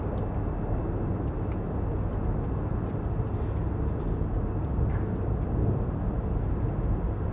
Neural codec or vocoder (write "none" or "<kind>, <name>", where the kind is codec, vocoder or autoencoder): none